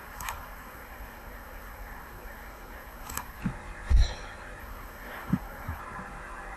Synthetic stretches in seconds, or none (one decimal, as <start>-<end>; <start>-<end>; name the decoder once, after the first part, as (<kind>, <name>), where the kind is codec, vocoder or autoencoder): 0.0-3.4 (codec, SNAC); 4.6-5.8